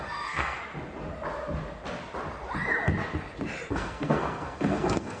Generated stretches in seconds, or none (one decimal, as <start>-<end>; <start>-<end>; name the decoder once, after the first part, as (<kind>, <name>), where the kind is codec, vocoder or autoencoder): 0.0-0.6 (codec, SNAC); 3.7-5.2